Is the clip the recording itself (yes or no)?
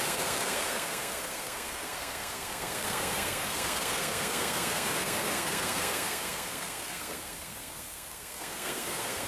no